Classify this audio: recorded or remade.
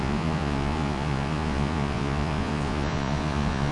remade